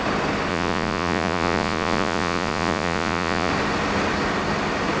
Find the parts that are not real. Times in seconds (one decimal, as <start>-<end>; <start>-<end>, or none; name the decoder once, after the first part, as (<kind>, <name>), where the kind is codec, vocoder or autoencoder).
0.5-3.5 (vocoder, Vocos)